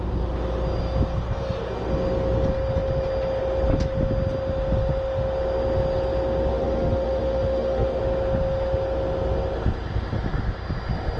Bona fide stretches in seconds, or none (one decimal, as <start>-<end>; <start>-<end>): 0.0-6.5; 8.0-11.2